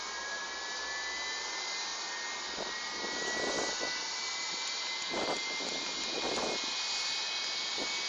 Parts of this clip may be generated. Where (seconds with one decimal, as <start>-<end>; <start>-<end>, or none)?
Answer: none